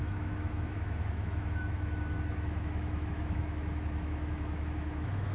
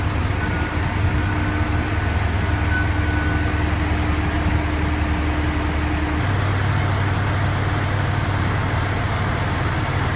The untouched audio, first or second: second